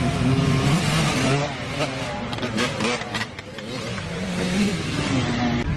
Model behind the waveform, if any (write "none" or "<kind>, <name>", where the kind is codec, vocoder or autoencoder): none